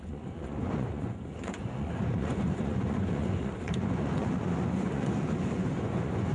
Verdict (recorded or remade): remade